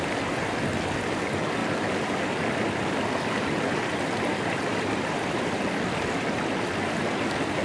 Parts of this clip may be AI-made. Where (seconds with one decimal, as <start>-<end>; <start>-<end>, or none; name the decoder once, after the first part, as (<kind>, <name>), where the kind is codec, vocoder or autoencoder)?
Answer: none